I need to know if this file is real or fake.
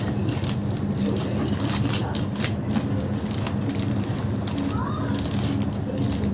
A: real